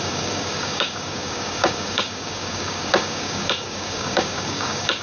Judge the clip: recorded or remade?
remade